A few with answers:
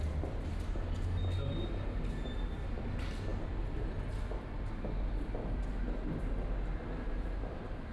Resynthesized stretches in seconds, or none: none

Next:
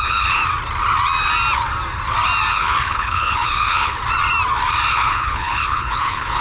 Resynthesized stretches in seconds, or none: 0.0-0.4 (codec, HILCodec); 2.5-4.0; 4.9-6.4

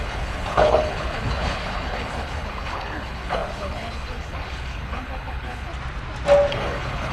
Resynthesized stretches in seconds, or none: 0.0-5.7 (codec, HILCodec); 6.5-7.1

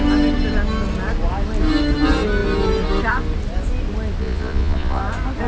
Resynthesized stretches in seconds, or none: 4.2-5.0 (vocoder, Vocos)

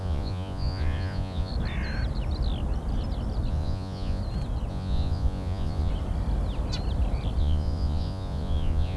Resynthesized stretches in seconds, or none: 0.0-1.5 (vocoder, Vocos); 3.5-4.2; 4.7-5.9; 7.4-9.0

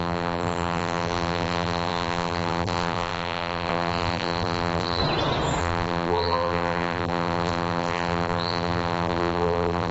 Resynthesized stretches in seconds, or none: 0.0-5.0 (vocoder, BigVGAN v2); 5.6-9.9

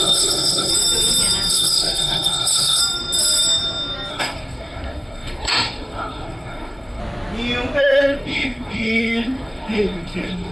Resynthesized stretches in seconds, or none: 0.0-0.7 (codec, SNAC); 1.5-2.8; 4.1-7.0; 7.8-10.5

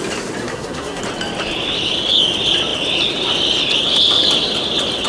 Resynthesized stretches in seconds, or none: 0.4-1.0 (codec, SNAC)